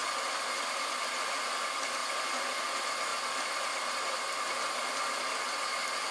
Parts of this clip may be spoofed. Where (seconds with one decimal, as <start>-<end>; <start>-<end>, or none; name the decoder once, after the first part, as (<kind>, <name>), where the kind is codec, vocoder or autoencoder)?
none

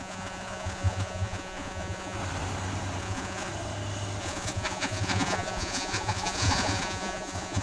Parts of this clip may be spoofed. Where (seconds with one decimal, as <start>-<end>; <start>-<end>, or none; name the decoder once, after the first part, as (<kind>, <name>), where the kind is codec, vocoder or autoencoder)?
0.0-2.2 (vocoder, Vocos); 3.0-3.5; 4.2-7.6